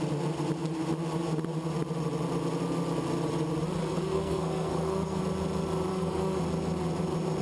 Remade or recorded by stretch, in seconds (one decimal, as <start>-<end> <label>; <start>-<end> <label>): 0.0-3.8 recorded; 3.8-5.2 remade; 5.2-5.9 recorded; 5.9-6.4 remade; 6.4-7.4 recorded